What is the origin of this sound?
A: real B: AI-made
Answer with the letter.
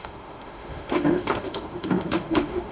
B